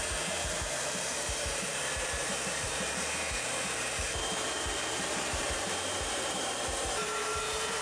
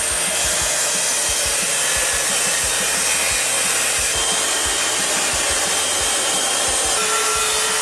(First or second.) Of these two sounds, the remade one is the first